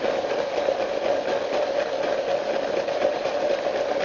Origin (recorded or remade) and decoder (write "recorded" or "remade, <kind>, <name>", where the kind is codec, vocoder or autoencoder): remade, vocoder, BigVGAN v2